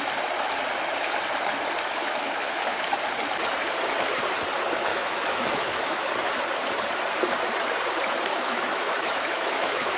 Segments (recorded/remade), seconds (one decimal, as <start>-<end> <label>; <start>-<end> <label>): 0.0-2.0 recorded; 2.0-2.8 remade; 2.8-4.9 recorded; 4.9-6.1 remade; 6.1-8.3 recorded; 8.3-10.0 remade